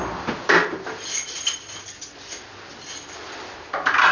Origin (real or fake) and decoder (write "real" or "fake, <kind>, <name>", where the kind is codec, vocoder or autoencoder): real